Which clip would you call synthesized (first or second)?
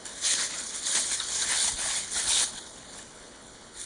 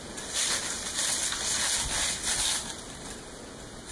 first